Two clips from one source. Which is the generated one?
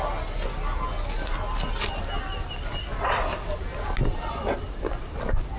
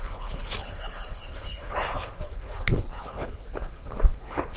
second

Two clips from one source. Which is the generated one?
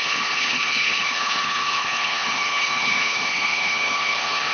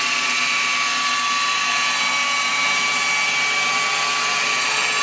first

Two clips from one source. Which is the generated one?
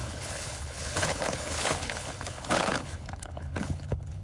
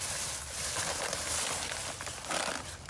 first